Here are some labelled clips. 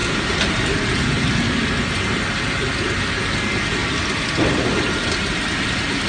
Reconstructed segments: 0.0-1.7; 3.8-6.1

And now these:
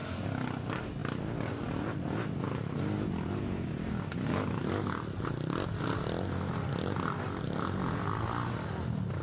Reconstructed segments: none

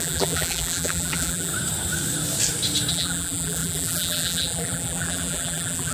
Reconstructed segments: 0.0-1.5; 2.9-5.9

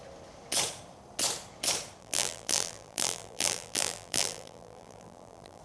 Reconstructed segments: 2.0-5.6